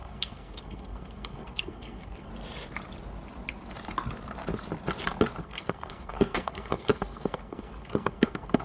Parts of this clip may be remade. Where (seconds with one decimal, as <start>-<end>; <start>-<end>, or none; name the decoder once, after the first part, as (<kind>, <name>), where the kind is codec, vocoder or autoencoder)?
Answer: 0.0-2.3 (codec, SNAC); 5.4-8.6